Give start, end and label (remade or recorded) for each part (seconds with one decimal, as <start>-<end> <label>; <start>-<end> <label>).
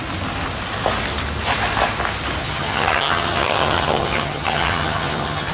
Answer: 0.0-2.4 recorded; 2.4-5.5 remade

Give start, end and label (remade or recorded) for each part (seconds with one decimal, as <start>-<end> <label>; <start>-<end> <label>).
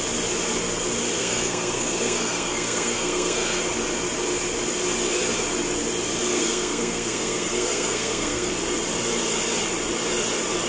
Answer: 0.0-1.2 recorded; 1.2-3.6 remade; 3.6-6.3 recorded; 6.3-8.5 remade; 8.5-10.7 recorded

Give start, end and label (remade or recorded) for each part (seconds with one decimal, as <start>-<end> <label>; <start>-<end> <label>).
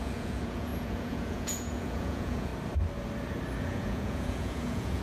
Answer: 0.0-2.5 remade; 2.5-3.6 recorded; 3.6-5.0 remade